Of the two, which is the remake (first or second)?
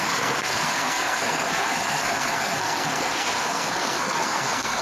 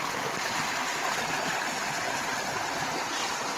first